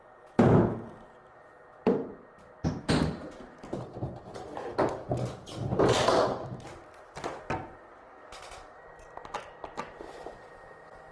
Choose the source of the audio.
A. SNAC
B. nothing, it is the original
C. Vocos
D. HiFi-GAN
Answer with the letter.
B